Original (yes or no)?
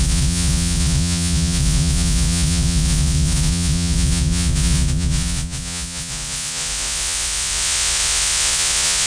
no